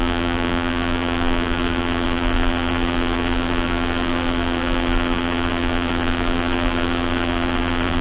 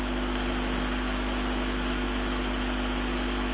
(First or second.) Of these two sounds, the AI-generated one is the first